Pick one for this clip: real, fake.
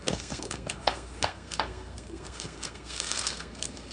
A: fake